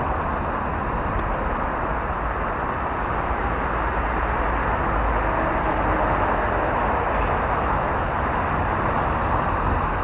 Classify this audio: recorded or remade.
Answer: recorded